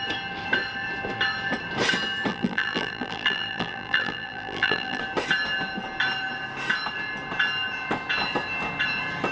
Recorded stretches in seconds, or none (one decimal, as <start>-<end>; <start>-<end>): 0.0-2.3; 5.0-9.3